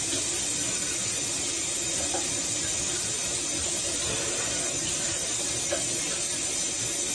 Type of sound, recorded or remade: recorded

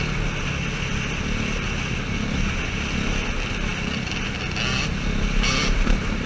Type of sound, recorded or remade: recorded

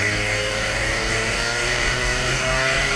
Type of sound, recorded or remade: remade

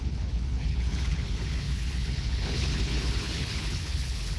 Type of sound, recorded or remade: remade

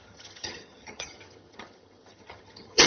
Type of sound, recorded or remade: remade